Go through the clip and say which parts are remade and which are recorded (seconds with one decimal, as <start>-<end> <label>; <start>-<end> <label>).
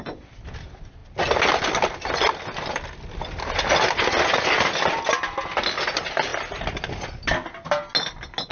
0.0-8.5 recorded